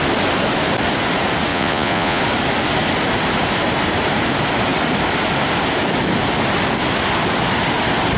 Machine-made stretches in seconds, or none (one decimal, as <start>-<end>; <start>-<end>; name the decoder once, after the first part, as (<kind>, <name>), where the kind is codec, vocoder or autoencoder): 1.5-2.2 (vocoder, Vocos)